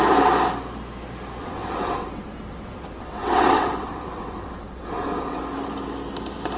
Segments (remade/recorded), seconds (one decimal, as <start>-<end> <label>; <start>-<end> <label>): 0.0-1.4 recorded; 1.4-5.4 remade; 5.4-6.6 recorded